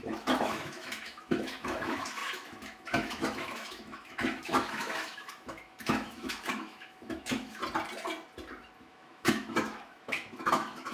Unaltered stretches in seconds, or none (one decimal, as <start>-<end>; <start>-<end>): 7.6-8.8